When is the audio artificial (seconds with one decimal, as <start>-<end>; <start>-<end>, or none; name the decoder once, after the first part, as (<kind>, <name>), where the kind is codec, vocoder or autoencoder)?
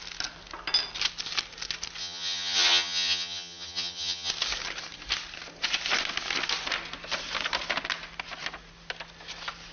2.0-4.3 (vocoder, HiFi-GAN)